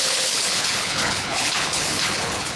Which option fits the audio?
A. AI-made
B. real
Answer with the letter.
A